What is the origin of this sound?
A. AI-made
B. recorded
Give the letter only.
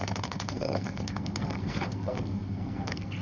A